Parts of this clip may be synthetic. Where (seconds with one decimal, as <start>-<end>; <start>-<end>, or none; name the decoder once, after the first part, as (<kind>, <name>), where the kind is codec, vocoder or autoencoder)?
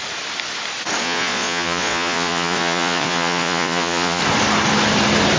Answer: 1.0-4.2 (vocoder, Vocos)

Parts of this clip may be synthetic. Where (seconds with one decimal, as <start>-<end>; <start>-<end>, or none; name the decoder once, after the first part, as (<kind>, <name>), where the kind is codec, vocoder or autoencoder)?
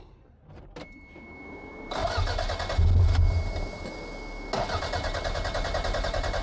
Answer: none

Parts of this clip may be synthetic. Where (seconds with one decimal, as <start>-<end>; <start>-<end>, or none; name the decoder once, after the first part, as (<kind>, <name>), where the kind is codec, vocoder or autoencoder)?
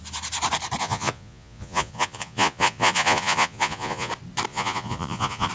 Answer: 0.8-4.1 (vocoder, Vocos); 4.5-5.5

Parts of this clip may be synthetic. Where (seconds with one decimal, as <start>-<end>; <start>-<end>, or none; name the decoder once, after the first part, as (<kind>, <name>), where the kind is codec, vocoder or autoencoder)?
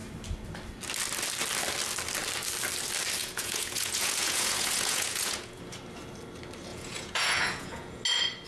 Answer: 3.2-5.6 (vocoder, Vocos); 6.7-8.0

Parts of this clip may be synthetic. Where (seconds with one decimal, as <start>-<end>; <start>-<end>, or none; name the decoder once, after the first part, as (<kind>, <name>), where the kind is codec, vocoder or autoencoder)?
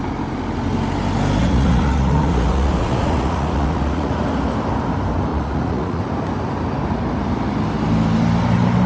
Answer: 1.4-4.2 (vocoder, Vocos); 5.3-6.0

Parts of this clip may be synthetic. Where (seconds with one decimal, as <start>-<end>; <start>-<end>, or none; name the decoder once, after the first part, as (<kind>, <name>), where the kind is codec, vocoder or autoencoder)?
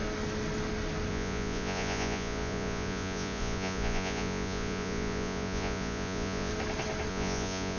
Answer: 1.1-6.5 (vocoder, Vocos); 7.1-7.8